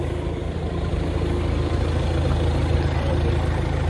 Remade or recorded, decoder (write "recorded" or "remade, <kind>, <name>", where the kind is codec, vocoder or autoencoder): recorded